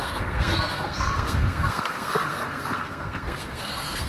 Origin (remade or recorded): remade